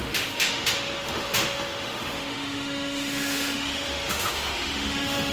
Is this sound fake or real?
fake